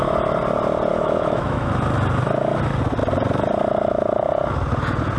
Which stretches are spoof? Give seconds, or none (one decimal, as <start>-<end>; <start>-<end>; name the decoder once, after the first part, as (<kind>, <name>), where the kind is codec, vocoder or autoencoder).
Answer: 0.9-1.7 (autoencoder, DAC-VAE)